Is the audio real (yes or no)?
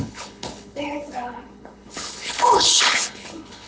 no